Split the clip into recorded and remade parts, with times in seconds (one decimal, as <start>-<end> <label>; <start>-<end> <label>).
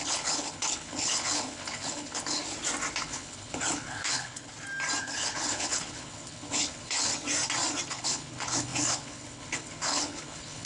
0.0-2.4 remade; 2.4-3.0 recorded; 3.0-4.5 remade; 4.5-5.0 recorded; 5.0-7.1 remade; 7.1-7.9 recorded; 7.9-10.7 remade